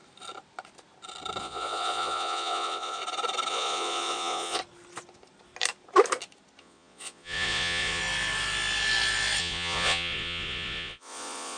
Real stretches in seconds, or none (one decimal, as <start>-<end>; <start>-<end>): 0.0-1.4; 3.0-3.5; 4.6-6.6; 8.0-9.4